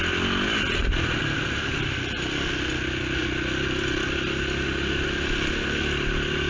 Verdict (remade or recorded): recorded